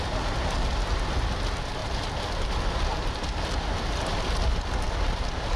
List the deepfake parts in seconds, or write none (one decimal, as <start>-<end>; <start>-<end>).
1.8-5.6